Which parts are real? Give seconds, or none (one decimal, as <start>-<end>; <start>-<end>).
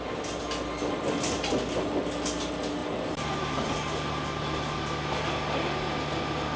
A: 0.0-2.8; 3.7-6.6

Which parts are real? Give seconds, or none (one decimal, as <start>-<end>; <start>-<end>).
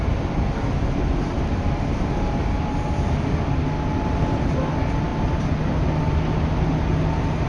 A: 0.0-7.5